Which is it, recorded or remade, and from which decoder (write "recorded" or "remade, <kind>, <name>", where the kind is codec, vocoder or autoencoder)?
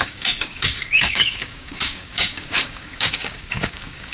remade, codec, DAC